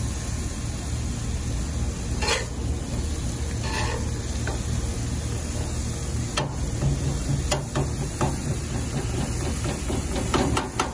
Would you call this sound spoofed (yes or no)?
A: no